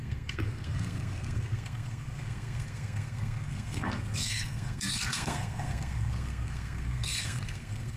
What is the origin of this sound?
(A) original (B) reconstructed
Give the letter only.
B